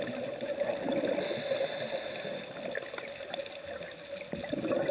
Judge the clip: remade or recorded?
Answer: recorded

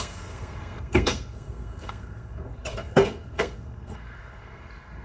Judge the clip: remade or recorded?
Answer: remade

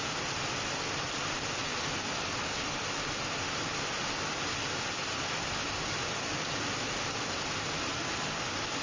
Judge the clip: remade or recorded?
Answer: recorded